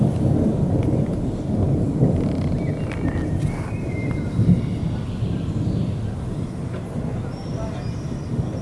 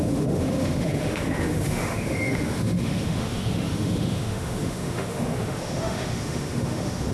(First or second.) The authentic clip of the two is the first